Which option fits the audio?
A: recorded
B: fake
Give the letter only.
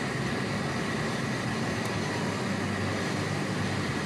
A